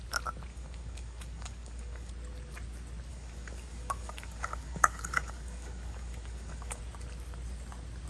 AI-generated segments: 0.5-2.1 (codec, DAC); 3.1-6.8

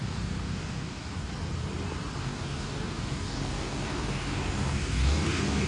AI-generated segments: 0.0-1.3 (codec, DAC); 2.2-5.7

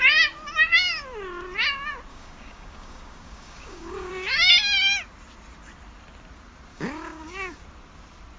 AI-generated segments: 2.1-4.5 (codec, DAC); 6.7-7.6

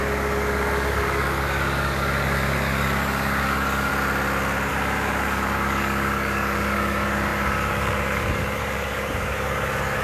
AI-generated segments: 0.0-3.9 (codec, DAC); 4.7-10.0

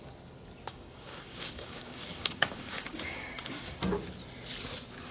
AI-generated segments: 0.7-3.8 (codec, DAC)

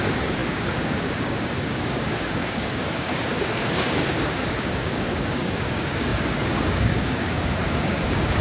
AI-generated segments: 0.0-8.4 (codec, DAC)